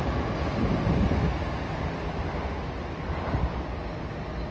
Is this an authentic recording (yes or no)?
yes